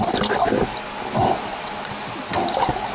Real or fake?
real